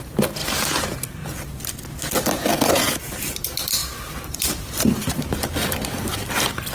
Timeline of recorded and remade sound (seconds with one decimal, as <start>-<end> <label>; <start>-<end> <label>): 0.0-3.8 recorded; 3.8-4.5 remade; 4.5-6.7 recorded